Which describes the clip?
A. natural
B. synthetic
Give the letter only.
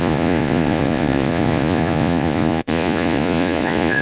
B